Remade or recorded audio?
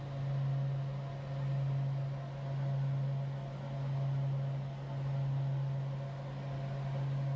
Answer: recorded